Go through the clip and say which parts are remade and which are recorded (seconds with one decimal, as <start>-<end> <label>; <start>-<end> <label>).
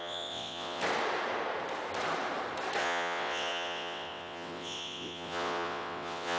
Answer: 0.0-0.8 remade; 0.8-2.8 recorded; 2.8-6.4 remade